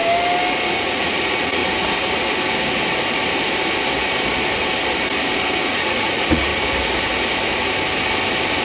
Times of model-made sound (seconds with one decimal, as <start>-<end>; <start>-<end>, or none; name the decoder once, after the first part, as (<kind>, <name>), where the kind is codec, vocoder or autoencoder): 0.5-1.6 (vocoder, Vocos); 5.6-6.5